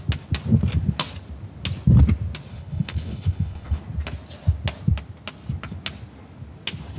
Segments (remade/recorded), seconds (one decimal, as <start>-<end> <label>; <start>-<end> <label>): 0.0-2.5 recorded; 2.5-3.8 remade; 3.8-7.0 recorded